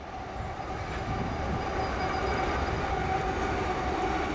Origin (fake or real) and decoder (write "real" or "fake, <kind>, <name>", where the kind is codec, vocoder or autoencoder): real